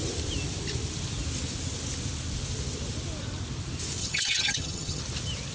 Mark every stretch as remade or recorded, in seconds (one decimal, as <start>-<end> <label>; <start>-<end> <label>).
0.0-4.0 recorded; 4.0-5.0 remade; 5.0-5.5 recorded